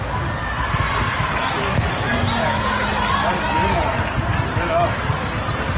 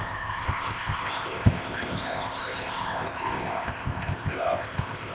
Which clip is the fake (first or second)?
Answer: second